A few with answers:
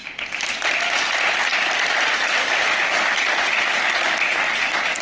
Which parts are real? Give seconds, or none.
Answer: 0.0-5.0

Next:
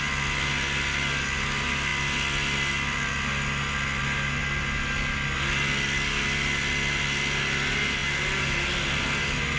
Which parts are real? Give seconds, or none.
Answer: 0.0-9.6